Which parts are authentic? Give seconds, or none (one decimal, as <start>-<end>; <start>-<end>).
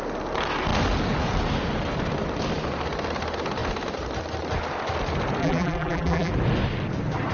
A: 0.0-5.4; 6.3-7.3